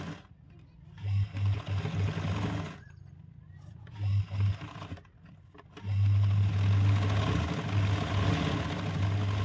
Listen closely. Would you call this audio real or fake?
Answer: real